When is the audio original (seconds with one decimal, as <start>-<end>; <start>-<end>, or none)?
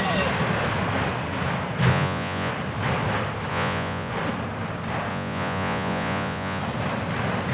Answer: 0.0-1.9; 2.5-3.5; 4.1-5.1; 6.6-7.5